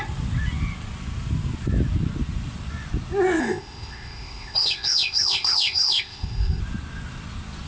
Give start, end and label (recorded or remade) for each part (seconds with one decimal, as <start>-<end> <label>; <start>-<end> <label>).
0.0-3.4 recorded; 3.4-6.6 remade; 6.6-7.7 recorded